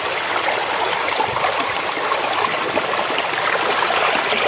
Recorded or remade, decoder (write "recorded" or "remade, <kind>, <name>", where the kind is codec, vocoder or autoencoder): recorded